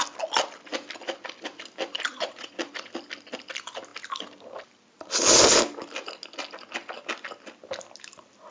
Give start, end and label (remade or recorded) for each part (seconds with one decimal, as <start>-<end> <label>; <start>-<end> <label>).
0.0-2.1 recorded; 2.1-2.7 remade; 2.7-8.5 recorded